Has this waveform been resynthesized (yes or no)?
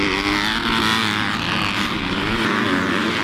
no